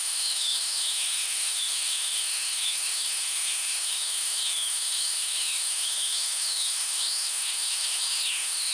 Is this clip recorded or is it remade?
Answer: remade